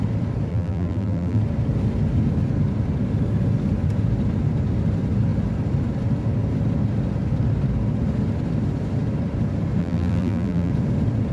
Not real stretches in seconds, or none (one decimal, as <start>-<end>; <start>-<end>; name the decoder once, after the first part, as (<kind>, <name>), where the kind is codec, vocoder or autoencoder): 0.5-1.4 (vocoder, BigVGAN v2); 9.8-10.7

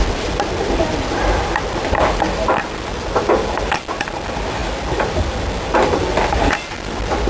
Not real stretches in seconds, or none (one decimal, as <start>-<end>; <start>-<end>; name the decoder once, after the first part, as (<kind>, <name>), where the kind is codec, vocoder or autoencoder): 0.0-4.6 (vocoder, BigVGAN v2); 5.6-7.3

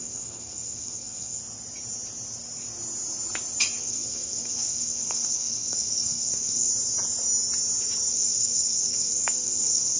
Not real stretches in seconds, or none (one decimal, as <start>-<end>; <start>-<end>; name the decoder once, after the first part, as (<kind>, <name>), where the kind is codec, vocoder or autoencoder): 0.0-1.4 (codec, SNAC); 3.8-6.7; 8.1-10.0

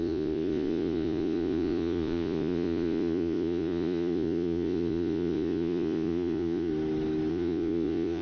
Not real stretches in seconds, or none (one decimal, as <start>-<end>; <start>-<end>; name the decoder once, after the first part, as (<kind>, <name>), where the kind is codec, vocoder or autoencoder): 0.0-6.7 (vocoder, Vocos); 7.3-8.2

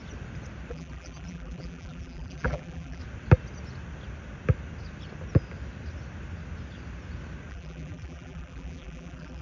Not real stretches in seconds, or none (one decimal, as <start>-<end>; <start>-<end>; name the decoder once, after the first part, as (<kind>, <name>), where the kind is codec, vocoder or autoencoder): 0.7-3.0 (vocoder, BigVGAN v2); 7.5-9.4

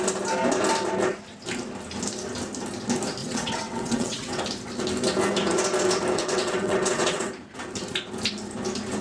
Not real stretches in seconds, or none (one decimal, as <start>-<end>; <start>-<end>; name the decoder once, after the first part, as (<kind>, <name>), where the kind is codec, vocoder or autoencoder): 3.2-4.4 (vocoder, WaveNeXt); 6.2-7.3

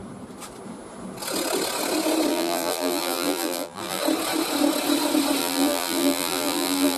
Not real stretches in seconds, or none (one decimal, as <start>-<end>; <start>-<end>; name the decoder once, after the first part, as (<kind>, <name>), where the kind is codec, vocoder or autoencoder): 2.3-4.0 (vocoder, BigVGAN v2); 5.4-7.0